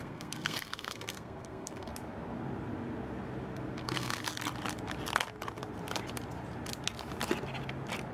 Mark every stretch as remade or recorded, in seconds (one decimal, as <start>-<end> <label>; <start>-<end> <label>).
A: 0.0-1.9 remade; 1.9-3.8 recorded; 3.8-4.2 remade; 4.2-8.1 recorded